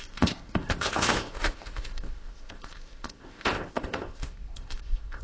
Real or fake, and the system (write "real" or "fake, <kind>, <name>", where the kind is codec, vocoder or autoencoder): fake, codec, ZipCodec